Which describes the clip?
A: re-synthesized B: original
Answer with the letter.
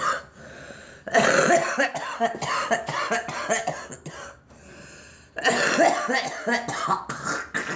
B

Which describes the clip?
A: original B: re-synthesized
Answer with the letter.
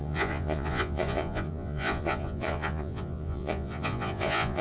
B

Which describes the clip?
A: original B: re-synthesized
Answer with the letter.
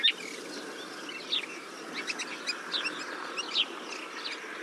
A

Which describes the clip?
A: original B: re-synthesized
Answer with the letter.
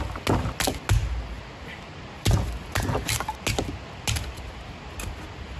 A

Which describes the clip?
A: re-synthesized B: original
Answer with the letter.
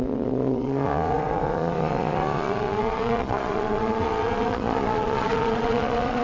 A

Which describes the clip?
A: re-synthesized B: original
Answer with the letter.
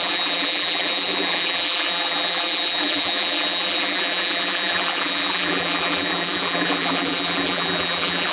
A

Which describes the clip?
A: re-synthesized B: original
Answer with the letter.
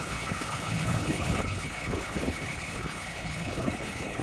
A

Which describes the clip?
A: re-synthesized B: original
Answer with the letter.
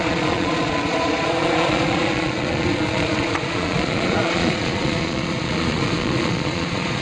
A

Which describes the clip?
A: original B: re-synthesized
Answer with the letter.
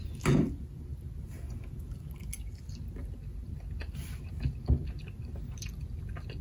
A